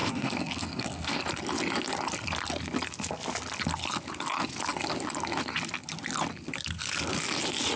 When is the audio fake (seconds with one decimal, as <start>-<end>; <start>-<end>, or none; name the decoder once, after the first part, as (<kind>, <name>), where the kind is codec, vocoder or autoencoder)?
0.0-1.2 (codec, SNAC)